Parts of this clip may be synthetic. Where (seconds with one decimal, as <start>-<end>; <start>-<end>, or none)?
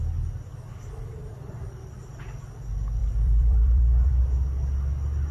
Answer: 0.5-2.2; 3.0-4.1